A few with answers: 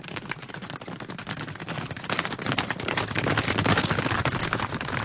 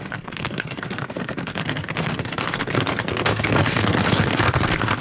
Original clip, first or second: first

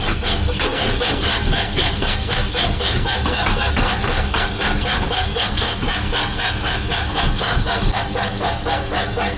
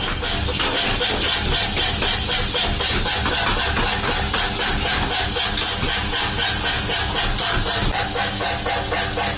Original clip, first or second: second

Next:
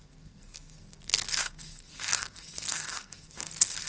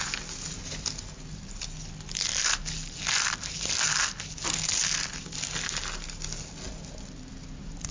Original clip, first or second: second